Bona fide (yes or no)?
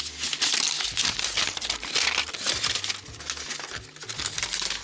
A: yes